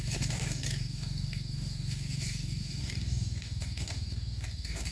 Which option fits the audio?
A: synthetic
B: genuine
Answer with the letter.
A